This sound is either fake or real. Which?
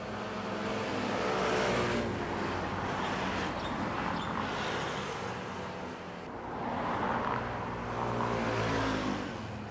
real